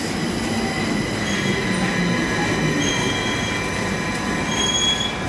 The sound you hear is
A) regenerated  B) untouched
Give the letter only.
B